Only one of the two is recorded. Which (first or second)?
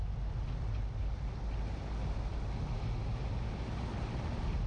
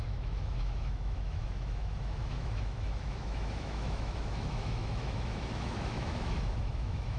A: first